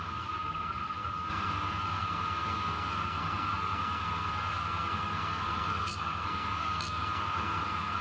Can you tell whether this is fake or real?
fake